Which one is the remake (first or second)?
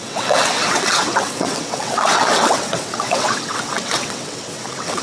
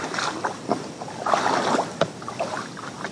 first